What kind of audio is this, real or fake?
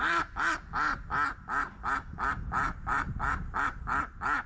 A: real